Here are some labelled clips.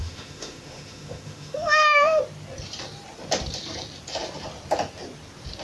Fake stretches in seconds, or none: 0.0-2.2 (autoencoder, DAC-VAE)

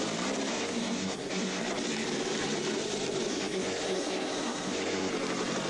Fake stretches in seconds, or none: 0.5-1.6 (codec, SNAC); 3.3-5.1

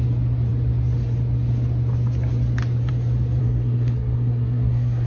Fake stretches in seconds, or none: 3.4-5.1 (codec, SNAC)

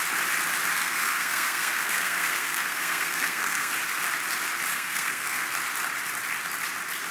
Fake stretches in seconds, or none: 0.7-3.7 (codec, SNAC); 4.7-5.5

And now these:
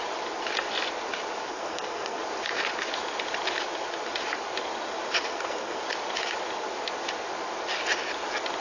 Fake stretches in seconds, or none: 1.5-2.2 (codec, SNAC); 5.3-5.8

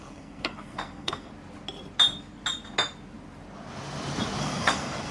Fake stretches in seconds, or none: 0.0-1.3 (codec, SNAC); 4.4-5.1

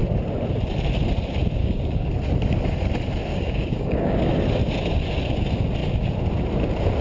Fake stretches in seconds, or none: 1.6-2.1 (codec, DAC); 3.3-4.3

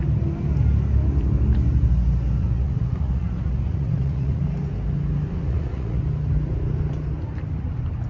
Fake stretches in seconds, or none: 2.4-4.4 (vocoder, Vocos); 5.4-6.0